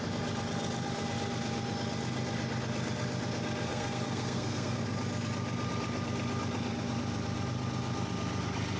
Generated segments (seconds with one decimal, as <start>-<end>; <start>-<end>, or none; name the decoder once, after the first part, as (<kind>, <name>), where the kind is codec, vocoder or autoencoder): 3.7-4.8 (codec, SNAC)